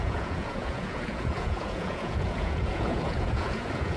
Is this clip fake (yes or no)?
yes